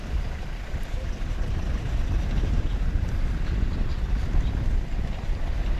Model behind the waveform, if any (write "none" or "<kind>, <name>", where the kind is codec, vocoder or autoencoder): none